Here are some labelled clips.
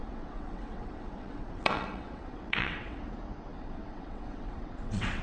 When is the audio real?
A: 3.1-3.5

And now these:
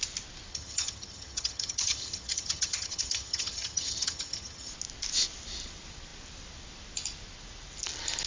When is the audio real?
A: 0.0-0.5; 4.7-8.3

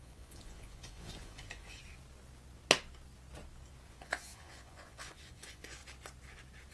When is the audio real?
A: 1.8-3.9; 5.8-6.7

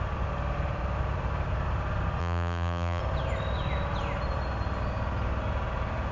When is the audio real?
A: 0.0-2.2; 3.0-6.1

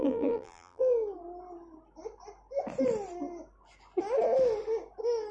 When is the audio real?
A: 0.9-5.3

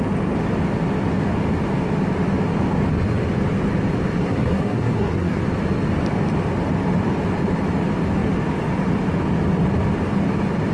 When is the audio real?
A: 0.0-4.2; 5.4-10.7